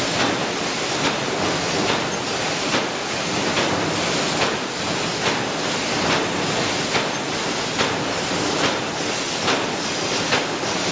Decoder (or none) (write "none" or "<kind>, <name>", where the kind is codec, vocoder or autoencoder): none